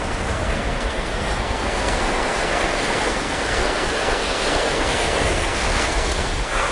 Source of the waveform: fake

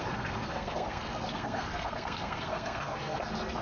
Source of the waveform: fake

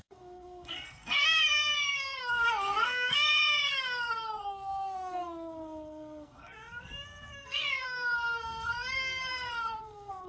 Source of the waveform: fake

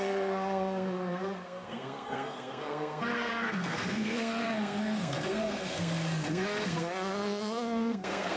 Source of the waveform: fake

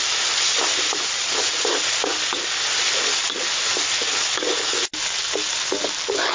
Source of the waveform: real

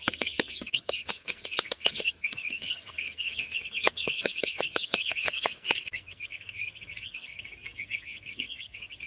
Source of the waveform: fake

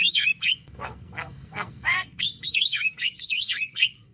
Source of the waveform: fake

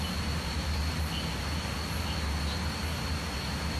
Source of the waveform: real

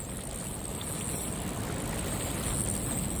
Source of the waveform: real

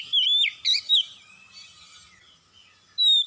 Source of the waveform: real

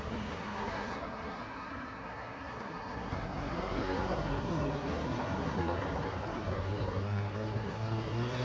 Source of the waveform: fake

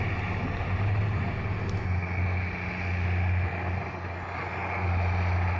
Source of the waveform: real